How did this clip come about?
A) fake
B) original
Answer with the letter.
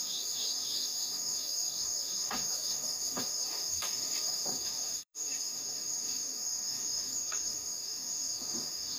A